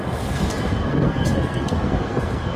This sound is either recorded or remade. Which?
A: remade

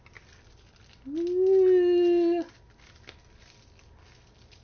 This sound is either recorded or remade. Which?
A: recorded